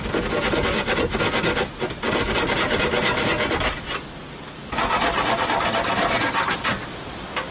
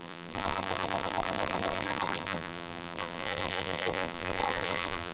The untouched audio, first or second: first